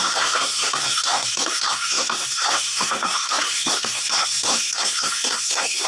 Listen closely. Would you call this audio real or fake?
fake